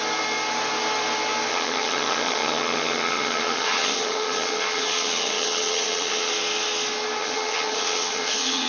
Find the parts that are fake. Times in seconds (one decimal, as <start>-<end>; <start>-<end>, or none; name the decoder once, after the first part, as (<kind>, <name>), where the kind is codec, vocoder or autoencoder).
1.5-6.3 (vocoder, HiFi-GAN); 7.2-8.7